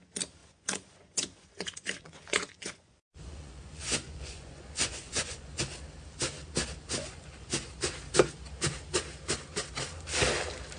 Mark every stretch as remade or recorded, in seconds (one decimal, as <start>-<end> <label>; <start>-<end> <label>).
0.0-0.4 recorded; 0.4-5.6 remade; 5.6-7.0 recorded; 7.0-7.7 remade; 7.7-10.8 recorded